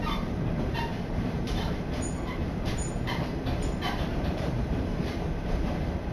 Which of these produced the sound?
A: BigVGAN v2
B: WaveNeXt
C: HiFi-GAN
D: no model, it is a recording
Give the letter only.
A